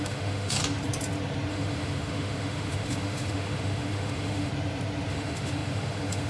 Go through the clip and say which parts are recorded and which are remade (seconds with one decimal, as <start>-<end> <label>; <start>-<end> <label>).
0.0-0.6 remade; 0.6-1.5 recorded; 1.5-4.5 remade; 4.5-5.1 recorded; 5.1-6.3 remade